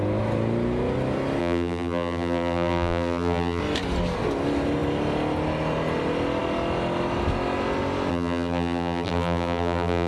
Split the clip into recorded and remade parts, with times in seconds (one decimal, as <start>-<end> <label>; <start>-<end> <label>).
0.0-1.4 recorded; 1.4-3.6 remade; 3.6-8.1 recorded; 8.1-10.1 remade